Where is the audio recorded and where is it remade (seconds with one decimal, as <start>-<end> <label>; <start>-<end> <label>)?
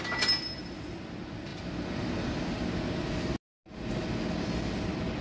0.0-5.2 recorded